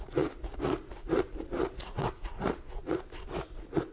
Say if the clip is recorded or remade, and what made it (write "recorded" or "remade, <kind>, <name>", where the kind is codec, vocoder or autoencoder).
remade, vocoder, Vocos